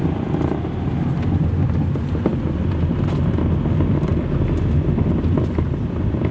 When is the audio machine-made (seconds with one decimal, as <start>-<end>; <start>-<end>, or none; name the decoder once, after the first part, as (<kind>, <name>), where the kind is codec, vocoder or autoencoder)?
none